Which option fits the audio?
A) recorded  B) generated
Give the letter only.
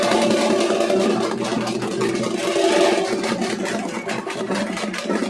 A